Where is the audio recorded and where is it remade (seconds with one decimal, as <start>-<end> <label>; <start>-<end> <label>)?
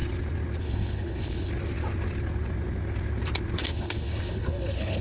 0.0-0.6 recorded; 0.6-1.5 remade; 1.5-3.6 recorded; 3.6-5.0 remade